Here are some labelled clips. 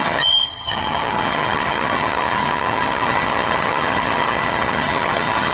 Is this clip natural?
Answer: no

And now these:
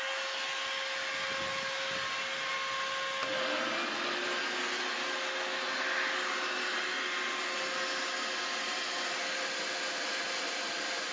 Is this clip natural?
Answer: yes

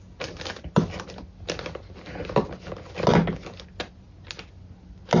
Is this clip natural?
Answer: yes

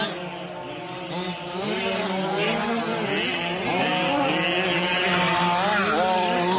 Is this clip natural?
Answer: yes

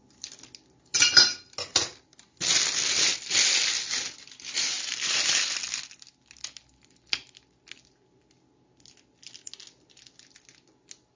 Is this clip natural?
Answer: yes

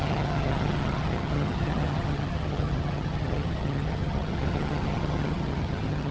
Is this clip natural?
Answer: no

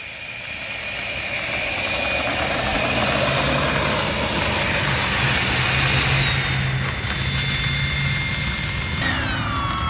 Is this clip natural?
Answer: yes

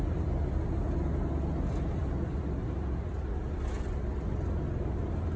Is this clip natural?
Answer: yes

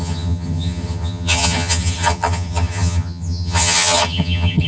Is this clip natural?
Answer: no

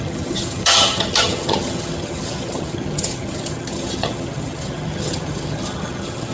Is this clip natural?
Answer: no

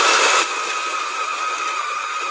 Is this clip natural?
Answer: yes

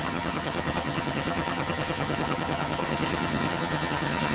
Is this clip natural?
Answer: no